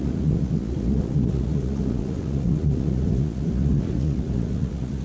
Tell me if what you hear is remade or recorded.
remade